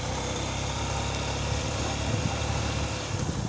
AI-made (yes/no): no